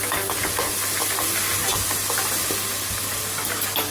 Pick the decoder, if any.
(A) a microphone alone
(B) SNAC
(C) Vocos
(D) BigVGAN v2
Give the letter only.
A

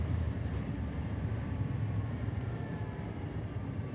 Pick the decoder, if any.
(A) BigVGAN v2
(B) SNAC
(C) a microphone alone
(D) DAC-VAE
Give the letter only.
A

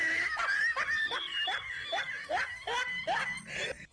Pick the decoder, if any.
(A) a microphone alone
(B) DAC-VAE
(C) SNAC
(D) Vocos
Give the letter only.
A